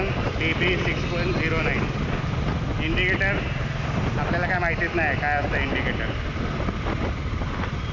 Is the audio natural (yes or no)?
yes